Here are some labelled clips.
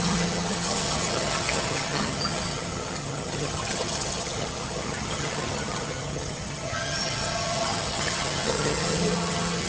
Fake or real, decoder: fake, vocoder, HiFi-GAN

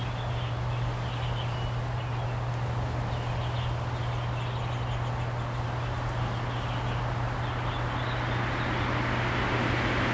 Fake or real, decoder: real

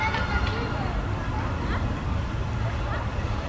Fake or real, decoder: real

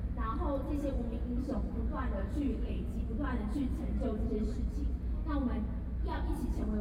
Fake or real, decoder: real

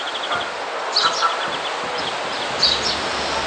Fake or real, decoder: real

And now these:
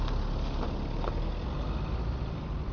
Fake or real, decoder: real